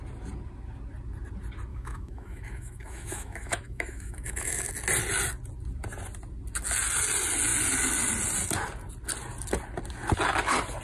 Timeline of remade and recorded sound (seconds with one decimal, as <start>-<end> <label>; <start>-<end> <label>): 0.0-1.7 recorded; 1.7-4.7 remade; 4.7-10.8 recorded

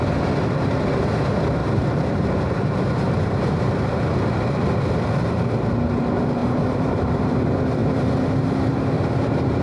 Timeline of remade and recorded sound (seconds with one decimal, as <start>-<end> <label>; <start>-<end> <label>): 0.0-1.6 recorded; 1.6-4.1 remade; 4.1-6.4 recorded; 6.4-7.3 remade; 7.3-7.8 recorded; 7.8-9.6 remade